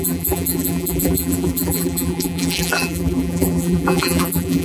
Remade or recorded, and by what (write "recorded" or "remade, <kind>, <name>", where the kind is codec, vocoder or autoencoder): remade, vocoder, BigVGAN v2